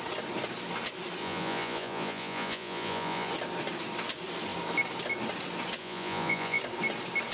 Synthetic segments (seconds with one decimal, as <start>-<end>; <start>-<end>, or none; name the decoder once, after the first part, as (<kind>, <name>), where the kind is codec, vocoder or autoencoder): 1.2-3.3 (vocoder, Vocos); 5.8-6.6